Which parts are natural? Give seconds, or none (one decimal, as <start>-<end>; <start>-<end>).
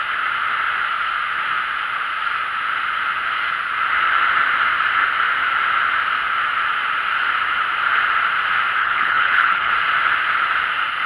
0.0-8.8; 9.7-11.1